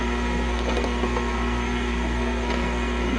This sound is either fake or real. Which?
fake